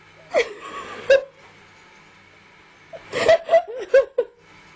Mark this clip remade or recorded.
recorded